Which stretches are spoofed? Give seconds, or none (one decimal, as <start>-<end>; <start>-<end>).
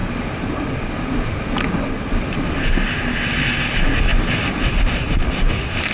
none